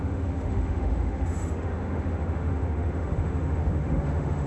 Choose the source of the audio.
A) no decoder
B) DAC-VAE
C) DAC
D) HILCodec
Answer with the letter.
B